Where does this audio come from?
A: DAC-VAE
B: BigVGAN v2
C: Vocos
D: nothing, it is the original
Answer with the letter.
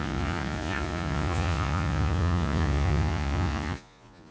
C